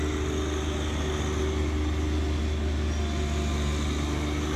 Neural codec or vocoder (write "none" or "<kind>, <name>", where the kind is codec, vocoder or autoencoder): none